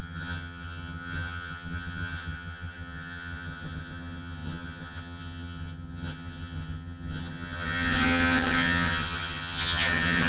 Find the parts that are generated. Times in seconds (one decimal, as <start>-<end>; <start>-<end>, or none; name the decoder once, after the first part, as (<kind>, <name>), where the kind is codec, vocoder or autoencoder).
0.0-10.3 (vocoder, HiFi-GAN)